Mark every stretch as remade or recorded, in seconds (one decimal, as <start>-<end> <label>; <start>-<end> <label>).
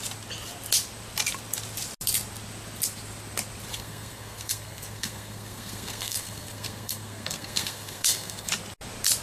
0.0-3.7 recorded; 3.7-8.5 remade; 8.5-9.2 recorded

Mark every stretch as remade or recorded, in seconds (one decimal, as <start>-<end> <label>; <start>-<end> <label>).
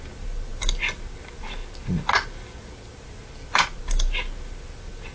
0.0-5.1 recorded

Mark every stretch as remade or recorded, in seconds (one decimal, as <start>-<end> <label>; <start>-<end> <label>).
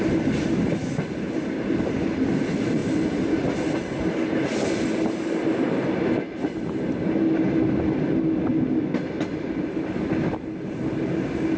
0.0-11.6 recorded